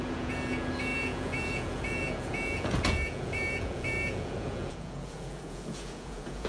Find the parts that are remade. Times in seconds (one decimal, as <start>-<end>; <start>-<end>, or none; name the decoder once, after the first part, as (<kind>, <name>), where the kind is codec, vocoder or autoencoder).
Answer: 0.0-6.5 (vocoder, Vocos)